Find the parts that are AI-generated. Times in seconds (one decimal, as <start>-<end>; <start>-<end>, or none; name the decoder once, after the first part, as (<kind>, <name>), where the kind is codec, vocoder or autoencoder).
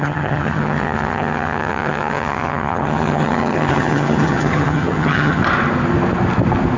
0.0-5.4 (vocoder, HiFi-GAN)